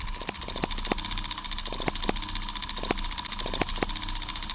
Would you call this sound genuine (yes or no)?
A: yes